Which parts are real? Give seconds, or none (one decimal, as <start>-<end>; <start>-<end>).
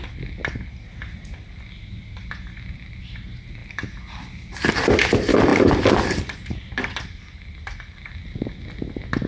0.0-9.3